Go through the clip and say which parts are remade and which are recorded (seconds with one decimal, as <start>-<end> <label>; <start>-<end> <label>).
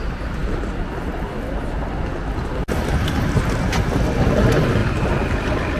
0.0-5.8 recorded